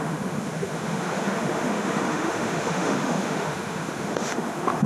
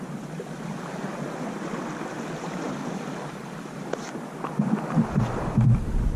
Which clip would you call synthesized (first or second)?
first